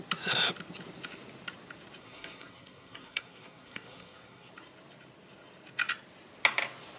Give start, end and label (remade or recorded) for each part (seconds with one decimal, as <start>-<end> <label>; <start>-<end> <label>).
0.0-2.0 recorded; 2.0-4.5 remade; 4.5-7.0 recorded